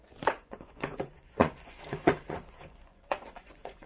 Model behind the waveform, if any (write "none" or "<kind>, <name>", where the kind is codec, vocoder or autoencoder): vocoder, Vocos